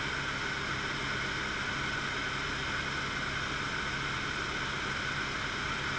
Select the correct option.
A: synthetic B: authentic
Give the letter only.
B